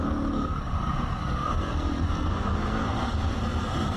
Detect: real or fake fake